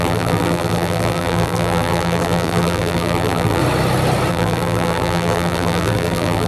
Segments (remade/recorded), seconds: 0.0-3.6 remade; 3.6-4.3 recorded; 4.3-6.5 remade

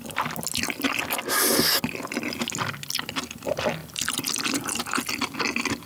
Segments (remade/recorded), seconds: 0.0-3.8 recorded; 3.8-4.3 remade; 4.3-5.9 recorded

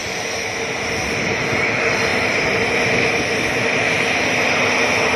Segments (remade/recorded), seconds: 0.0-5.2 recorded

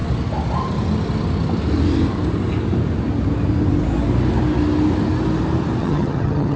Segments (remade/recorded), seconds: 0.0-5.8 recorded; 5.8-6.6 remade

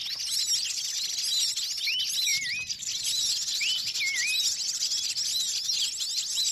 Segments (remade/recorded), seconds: 0.0-6.5 recorded

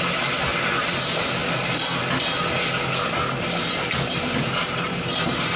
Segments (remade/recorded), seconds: 0.0-1.4 remade; 1.4-4.6 recorded; 4.6-5.6 remade

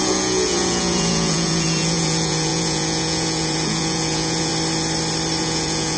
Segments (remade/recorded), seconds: 0.0-4.5 remade; 4.5-5.4 recorded; 5.4-6.0 remade